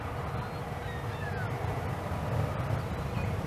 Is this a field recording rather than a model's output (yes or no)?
yes